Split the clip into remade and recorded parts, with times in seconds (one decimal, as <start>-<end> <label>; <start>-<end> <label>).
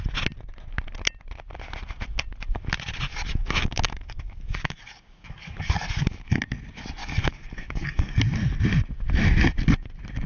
0.0-3.1 recorded; 3.1-6.4 remade; 6.4-7.0 recorded; 7.0-8.2 remade; 8.2-10.3 recorded